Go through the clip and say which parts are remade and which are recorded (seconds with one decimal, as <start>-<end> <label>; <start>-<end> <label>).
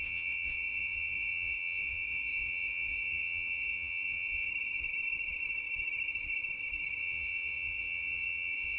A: 0.0-4.5 remade; 4.5-7.0 recorded; 7.0-8.8 remade